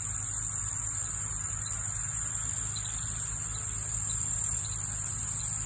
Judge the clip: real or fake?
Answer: real